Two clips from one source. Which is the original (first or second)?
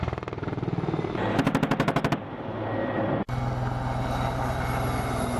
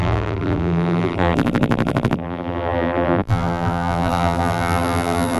first